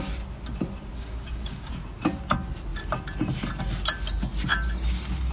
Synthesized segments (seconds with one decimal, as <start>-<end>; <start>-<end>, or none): 0.9-1.7